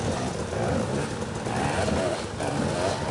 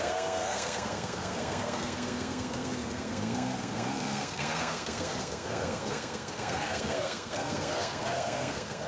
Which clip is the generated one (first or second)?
second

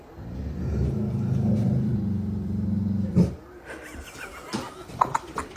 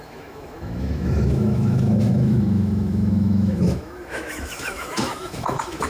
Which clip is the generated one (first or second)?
second